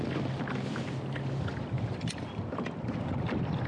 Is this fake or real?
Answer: real